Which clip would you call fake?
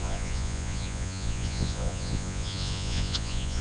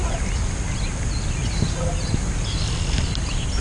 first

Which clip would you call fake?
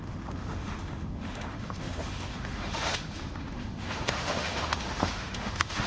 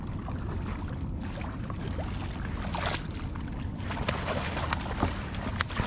first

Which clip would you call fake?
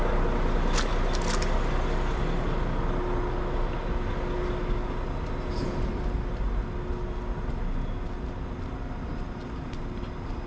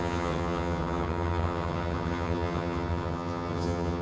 second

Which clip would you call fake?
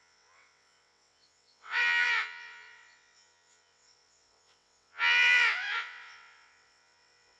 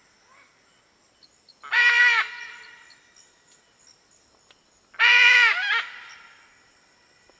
first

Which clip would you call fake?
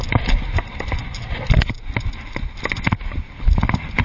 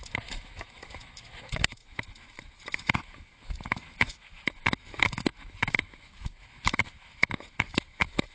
second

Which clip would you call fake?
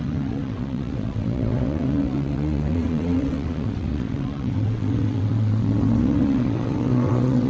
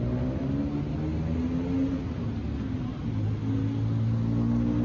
first